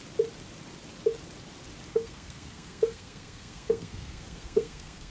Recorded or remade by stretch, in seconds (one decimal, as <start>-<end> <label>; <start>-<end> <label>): 0.0-1.9 recorded; 1.9-5.1 remade